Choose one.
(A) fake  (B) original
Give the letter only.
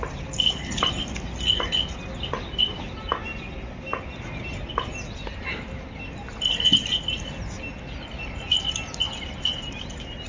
B